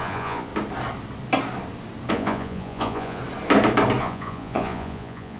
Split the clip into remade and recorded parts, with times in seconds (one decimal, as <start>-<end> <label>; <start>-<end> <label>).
0.0-0.5 remade; 0.5-2.1 recorded; 2.1-3.2 remade; 3.2-4.0 recorded; 4.0-5.4 remade